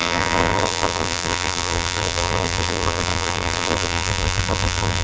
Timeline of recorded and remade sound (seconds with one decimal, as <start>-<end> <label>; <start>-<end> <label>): 0.0-5.0 remade